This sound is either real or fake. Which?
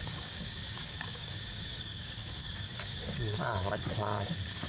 fake